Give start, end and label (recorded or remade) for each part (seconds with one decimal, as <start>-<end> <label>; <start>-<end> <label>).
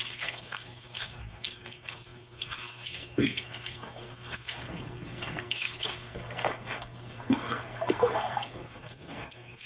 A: 0.0-9.7 remade